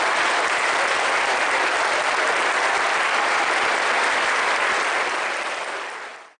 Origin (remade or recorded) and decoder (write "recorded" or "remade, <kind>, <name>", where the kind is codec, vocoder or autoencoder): recorded